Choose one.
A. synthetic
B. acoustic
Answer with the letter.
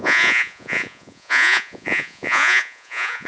A